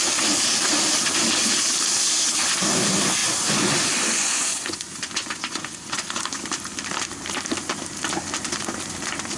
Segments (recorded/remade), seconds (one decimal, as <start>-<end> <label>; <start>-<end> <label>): 0.0-3.2 recorded; 3.2-6.4 remade; 6.4-9.4 recorded